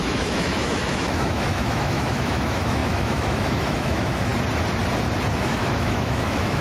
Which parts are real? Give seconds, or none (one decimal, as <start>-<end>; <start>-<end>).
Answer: 4.3-5.4